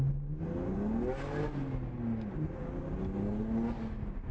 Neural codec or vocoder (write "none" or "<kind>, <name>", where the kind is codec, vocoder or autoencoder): none